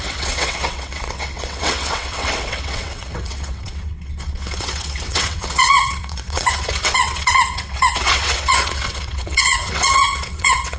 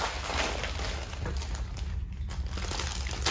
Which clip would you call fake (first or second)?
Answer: first